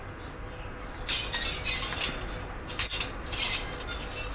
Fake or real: real